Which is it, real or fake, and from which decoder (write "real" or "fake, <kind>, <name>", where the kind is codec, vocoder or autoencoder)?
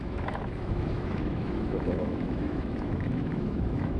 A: fake, autoencoder, DAC-VAE